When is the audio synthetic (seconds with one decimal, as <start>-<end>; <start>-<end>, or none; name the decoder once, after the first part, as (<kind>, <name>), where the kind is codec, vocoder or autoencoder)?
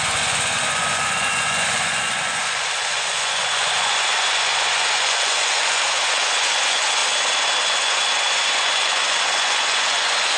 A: 0.0-7.0 (vocoder, Vocos); 7.6-10.4